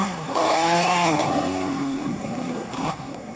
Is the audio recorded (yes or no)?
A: no